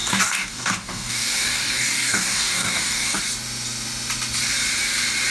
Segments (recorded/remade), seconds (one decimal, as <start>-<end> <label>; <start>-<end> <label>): 0.0-3.2 remade; 3.2-5.3 recorded